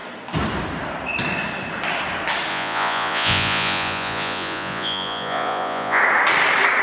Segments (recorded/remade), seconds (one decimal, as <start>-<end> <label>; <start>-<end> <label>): 0.0-2.5 recorded; 2.5-6.0 remade; 6.0-6.8 recorded